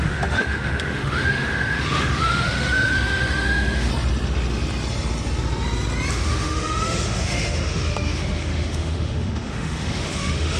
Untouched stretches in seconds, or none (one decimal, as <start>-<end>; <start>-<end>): 3.9-6.1